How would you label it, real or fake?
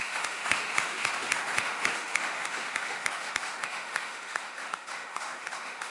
fake